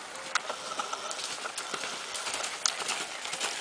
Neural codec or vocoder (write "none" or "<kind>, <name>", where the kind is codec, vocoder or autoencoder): none